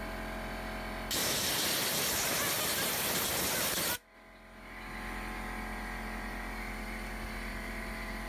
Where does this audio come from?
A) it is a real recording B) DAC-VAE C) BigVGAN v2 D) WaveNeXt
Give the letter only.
A